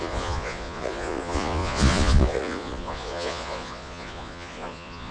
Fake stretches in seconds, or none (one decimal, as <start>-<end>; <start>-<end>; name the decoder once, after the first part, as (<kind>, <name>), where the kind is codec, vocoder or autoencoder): 0.0-5.1 (vocoder, Vocos)